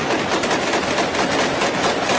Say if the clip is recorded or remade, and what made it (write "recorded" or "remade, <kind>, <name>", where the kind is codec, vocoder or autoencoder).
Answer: recorded